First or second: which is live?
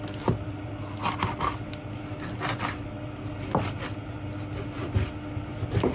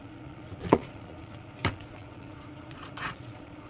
first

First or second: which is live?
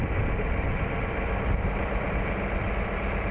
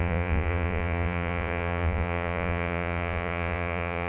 first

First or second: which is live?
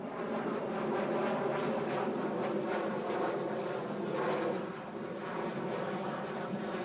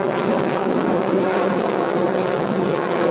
first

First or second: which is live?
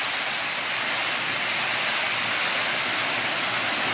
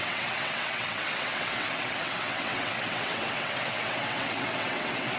first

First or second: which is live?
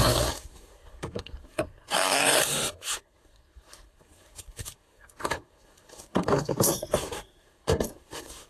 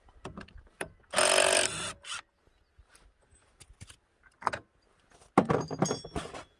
second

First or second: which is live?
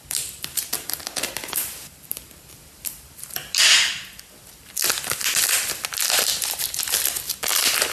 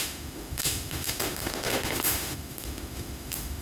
first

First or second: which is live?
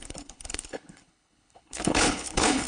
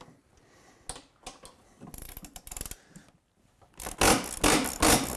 second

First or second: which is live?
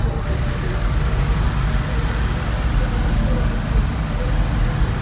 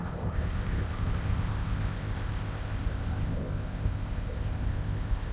first